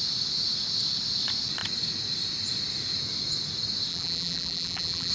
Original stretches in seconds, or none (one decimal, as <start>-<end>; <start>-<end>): 0.0-3.9